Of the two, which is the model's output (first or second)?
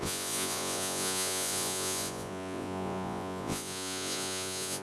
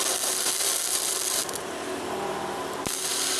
first